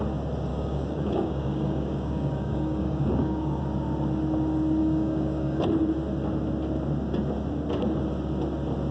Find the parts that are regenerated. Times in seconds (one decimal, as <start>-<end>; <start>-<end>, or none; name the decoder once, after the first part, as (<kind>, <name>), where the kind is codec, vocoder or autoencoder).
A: 0.5-3.6 (codec, DAC); 4.8-5.6